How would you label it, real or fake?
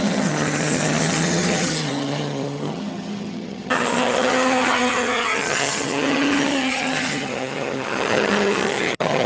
fake